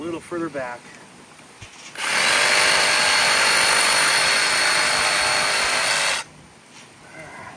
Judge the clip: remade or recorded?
recorded